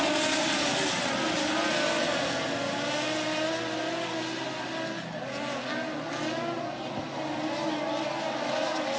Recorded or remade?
recorded